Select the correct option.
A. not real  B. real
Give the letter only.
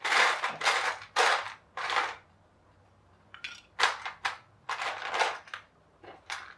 B